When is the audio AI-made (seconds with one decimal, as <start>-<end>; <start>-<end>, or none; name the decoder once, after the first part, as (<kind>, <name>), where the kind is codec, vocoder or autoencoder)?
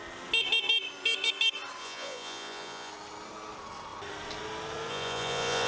1.8-2.9 (vocoder, Vocos); 4.9-5.7